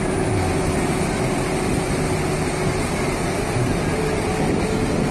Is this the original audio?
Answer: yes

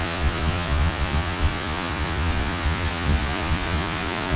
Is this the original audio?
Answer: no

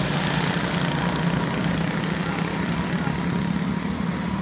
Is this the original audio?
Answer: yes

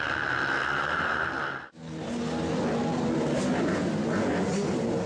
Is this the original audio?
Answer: yes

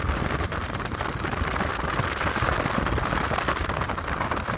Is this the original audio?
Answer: yes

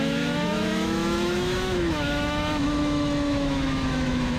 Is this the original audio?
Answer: no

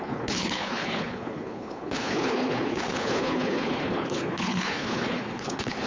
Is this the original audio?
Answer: no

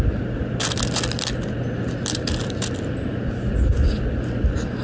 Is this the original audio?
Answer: yes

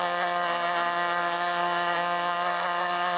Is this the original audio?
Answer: no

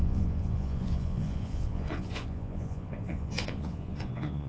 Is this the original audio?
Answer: no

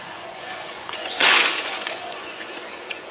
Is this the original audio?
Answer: no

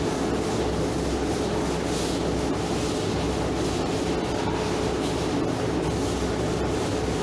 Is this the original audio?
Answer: yes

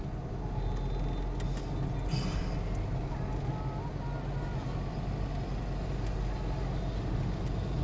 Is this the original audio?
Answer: yes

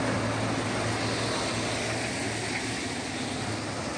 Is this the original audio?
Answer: yes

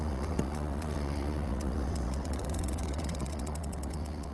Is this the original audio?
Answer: no